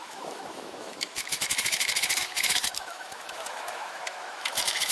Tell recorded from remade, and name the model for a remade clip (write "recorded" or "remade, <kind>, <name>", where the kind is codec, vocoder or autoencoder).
remade, autoencoder, DAC-VAE